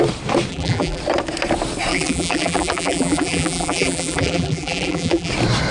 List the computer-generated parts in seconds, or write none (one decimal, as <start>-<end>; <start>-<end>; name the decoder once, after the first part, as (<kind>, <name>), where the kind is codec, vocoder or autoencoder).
0.5-1.0 (vocoder, BigVGAN v2); 1.9-5.3